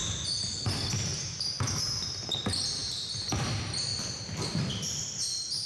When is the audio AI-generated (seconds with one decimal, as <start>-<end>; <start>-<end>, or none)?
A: 1.1-3.9; 4.5-5.7